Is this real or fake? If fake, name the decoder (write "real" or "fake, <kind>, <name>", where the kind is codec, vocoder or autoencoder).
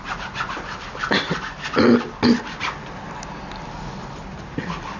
real